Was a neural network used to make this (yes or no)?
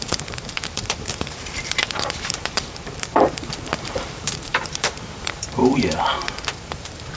yes